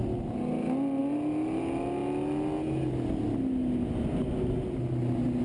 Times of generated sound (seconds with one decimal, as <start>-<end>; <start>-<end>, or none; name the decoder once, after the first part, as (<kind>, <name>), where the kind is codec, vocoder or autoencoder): none

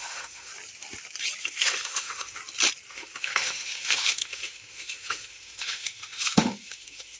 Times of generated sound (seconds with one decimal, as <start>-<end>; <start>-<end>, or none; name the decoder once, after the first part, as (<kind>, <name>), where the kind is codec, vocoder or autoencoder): 0.0-0.5 (autoencoder, DAC-VAE); 1.4-2.4; 2.9-7.2